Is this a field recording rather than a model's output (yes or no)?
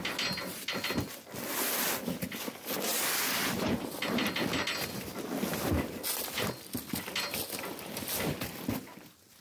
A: yes